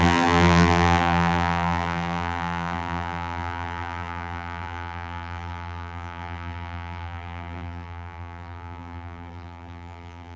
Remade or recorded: remade